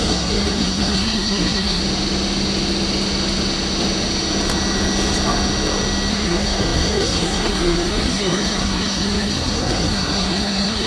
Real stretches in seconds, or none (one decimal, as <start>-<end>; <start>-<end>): 1.8-6.1